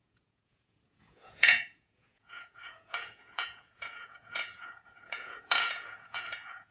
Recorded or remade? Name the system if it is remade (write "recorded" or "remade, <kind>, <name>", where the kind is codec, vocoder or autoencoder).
remade, vocoder, Vocos